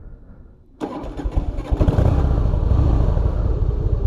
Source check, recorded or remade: remade